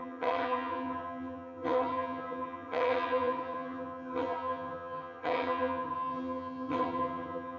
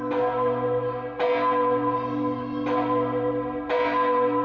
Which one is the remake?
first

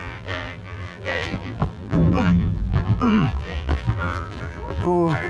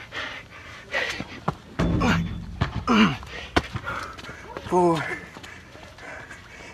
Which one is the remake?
first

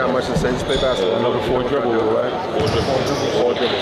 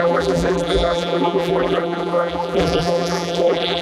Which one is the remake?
second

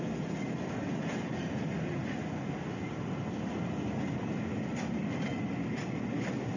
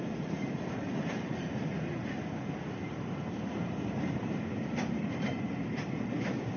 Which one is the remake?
second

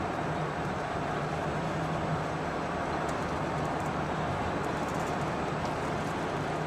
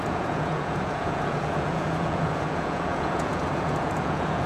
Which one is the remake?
second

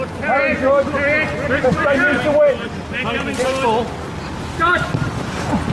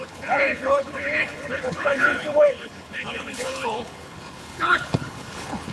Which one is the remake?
second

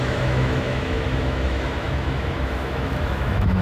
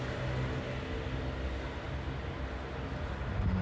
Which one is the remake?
first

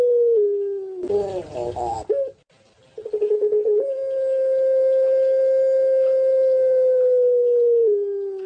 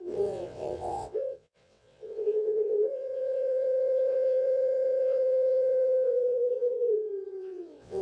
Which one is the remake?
second